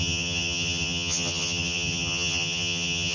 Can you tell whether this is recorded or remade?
remade